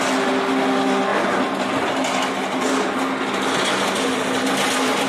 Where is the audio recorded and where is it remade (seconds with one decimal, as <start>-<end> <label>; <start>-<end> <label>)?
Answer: 0.0-5.1 recorded